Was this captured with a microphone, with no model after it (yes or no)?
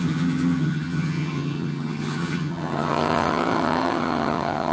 no